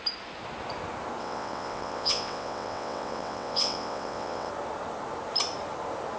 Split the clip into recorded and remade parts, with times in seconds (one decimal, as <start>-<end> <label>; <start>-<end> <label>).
0.0-1.2 recorded; 1.2-4.5 remade; 4.5-6.2 recorded